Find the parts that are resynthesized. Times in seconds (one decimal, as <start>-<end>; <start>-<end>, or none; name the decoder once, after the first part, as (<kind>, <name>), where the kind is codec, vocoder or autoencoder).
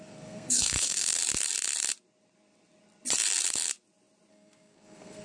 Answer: 0.0-1.2 (codec, SNAC); 4.3-5.2